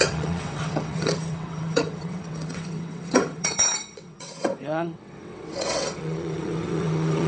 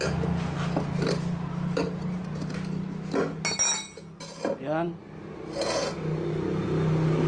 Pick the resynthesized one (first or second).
first